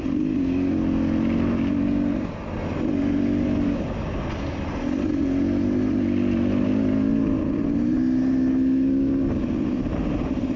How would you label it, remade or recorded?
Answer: recorded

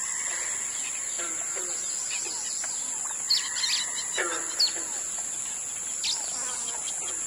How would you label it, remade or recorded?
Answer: recorded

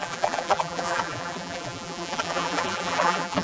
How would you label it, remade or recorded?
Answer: remade